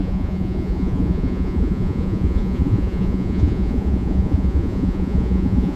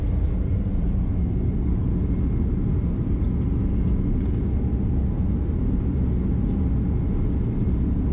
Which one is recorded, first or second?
second